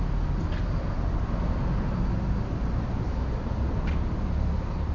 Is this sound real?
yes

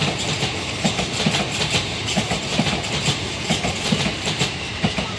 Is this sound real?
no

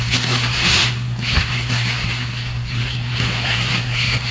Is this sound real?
no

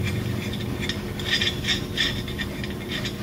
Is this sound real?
yes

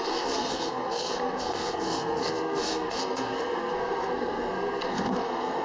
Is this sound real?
no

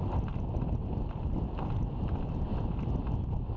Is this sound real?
yes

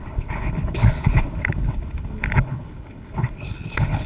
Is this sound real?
no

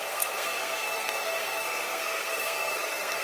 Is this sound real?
no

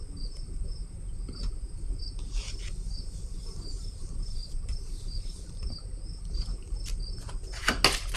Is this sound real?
yes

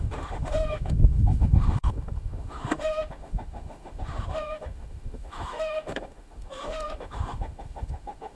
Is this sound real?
no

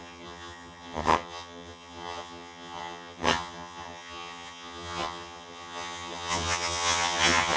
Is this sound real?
no